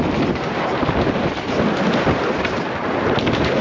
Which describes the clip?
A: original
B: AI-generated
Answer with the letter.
A